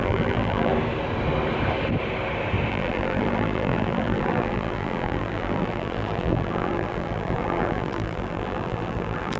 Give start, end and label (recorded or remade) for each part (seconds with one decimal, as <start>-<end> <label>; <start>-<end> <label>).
0.0-0.7 remade; 0.7-2.7 recorded; 2.7-9.4 remade